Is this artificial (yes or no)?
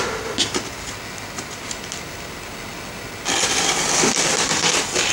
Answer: no